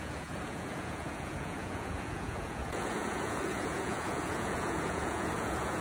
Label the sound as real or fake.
fake